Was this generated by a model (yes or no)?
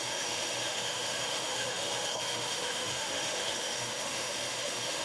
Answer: yes